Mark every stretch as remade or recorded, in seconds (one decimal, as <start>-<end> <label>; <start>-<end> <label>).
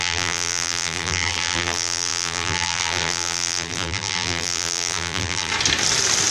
0.0-5.5 remade; 5.5-6.3 recorded